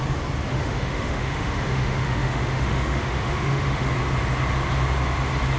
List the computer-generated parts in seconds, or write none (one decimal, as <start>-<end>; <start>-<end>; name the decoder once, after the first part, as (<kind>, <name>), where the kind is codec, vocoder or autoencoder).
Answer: 0.5-3.9 (autoencoder, DAC-VAE)